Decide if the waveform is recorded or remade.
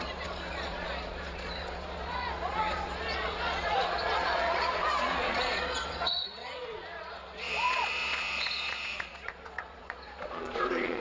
remade